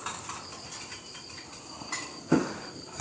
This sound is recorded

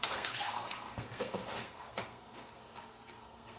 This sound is remade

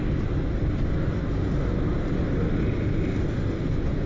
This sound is recorded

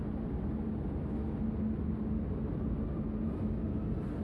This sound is recorded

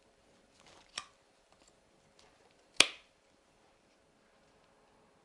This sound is recorded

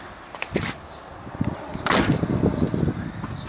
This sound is recorded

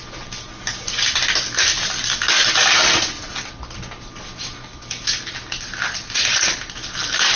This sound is recorded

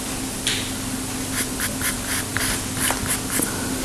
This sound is remade